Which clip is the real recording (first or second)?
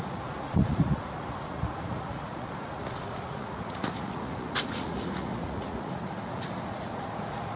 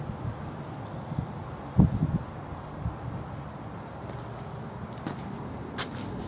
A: second